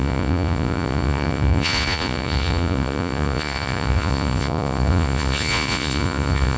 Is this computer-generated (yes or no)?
yes